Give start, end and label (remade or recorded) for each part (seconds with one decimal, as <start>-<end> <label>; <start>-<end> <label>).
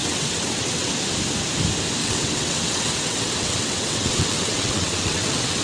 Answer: 0.0-0.9 remade; 0.9-2.0 recorded; 2.0-5.6 remade